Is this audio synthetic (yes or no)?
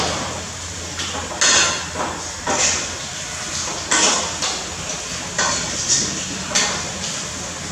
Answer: no